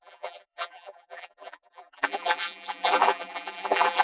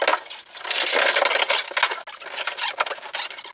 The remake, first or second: first